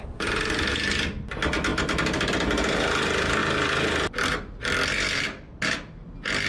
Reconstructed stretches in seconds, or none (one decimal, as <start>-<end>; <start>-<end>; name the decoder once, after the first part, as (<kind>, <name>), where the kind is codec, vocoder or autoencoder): none